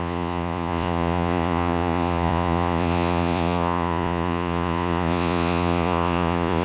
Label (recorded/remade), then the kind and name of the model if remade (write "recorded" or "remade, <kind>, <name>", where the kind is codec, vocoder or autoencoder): remade, vocoder, Vocos